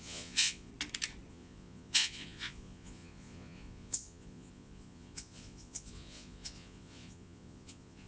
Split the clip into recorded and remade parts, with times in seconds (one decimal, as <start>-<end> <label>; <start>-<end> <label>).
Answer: 0.0-0.7 remade; 0.7-1.3 recorded; 1.3-8.1 remade